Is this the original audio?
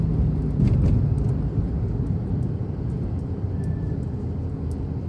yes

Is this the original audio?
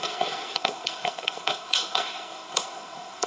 no